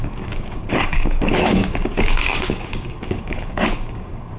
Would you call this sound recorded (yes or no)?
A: no